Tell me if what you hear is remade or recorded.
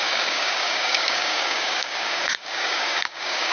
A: remade